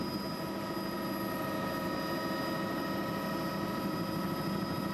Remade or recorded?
recorded